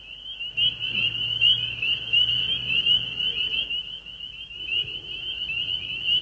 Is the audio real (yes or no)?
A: yes